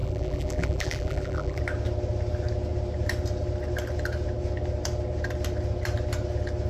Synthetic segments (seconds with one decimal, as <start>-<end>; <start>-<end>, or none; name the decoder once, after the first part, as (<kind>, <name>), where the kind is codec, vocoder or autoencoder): 0.0-1.6 (vocoder, BigVGAN v2)